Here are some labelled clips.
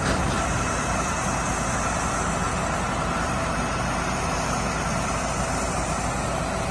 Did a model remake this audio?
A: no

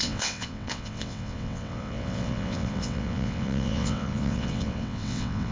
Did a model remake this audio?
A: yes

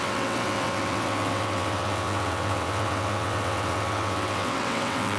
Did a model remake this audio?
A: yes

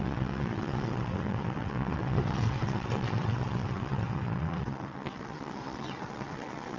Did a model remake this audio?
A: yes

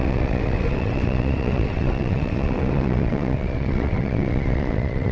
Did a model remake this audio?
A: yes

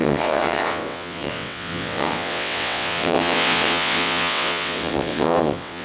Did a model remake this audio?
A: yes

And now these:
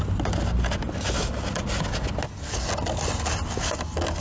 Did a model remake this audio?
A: no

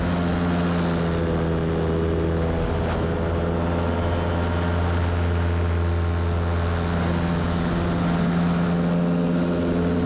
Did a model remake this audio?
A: no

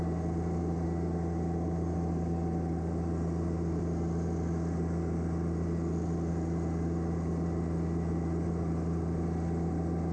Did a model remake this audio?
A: no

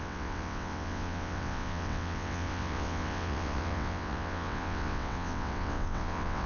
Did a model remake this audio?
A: yes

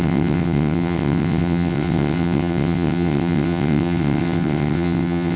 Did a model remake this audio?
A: yes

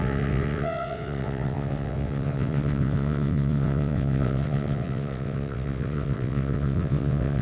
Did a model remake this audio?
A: yes